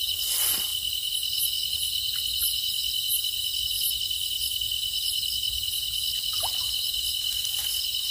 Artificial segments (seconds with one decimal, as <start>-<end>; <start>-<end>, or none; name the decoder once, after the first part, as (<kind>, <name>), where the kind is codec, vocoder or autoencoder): none